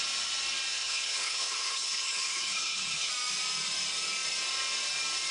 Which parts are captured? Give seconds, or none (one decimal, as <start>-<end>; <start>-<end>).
0.0-0.7; 3.1-5.3